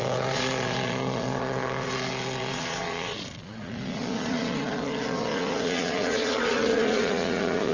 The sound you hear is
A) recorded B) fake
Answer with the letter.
B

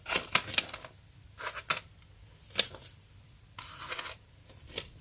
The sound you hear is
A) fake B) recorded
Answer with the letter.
B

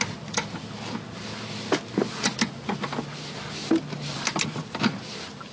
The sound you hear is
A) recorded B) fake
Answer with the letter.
A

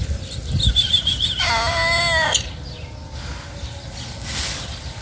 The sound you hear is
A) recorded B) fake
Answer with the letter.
A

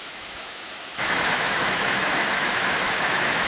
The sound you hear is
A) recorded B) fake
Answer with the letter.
B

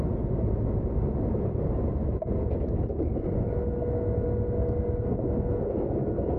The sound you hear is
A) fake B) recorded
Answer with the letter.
B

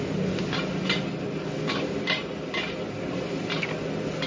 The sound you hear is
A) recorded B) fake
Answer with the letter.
A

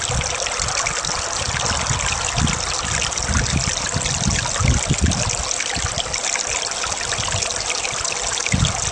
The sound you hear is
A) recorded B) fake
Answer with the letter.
A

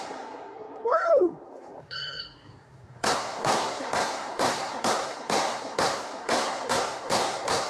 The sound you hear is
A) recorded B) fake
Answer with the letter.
B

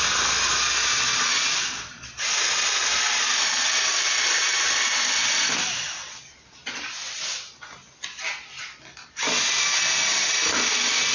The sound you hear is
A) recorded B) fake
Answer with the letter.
A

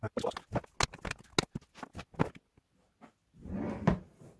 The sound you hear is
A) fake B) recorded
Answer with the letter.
B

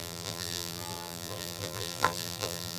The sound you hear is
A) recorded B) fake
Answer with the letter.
B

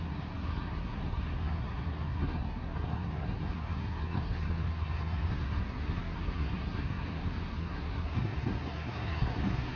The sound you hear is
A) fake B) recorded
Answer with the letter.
A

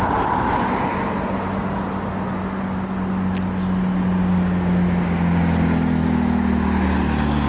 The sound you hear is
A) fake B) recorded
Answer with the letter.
B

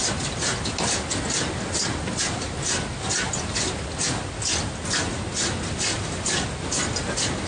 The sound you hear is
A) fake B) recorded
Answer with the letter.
B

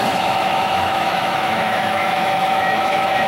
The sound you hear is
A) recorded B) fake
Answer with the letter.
B